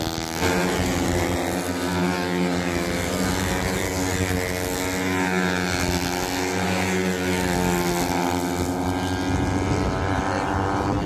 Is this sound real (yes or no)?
yes